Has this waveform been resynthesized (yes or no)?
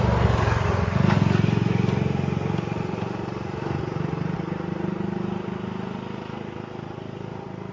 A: no